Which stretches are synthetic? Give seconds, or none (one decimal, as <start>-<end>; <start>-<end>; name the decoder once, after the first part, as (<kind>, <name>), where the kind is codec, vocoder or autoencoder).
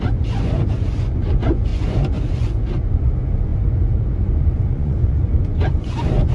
0.0-6.3 (vocoder, Vocos)